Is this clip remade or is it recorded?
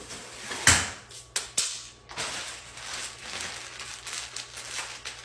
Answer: recorded